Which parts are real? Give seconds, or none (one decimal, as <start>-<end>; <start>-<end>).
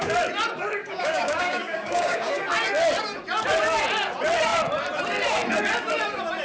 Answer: 0.0-0.8; 2.4-6.4